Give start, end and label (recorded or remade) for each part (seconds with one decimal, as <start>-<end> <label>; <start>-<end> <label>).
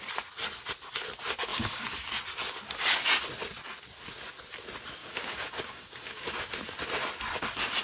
0.0-1.5 recorded; 1.5-2.1 remade; 2.1-5.0 recorded; 5.0-6.3 remade; 6.3-7.8 recorded